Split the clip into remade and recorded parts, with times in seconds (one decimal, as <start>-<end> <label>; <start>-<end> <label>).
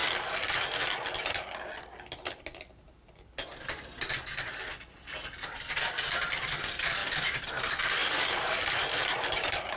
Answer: 0.0-7.0 recorded; 7.0-7.5 remade; 7.5-8.0 recorded; 8.0-9.8 remade